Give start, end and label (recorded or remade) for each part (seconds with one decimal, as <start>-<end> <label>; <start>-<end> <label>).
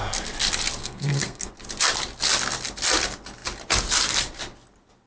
0.0-0.8 recorded; 0.8-1.5 remade; 1.5-5.1 recorded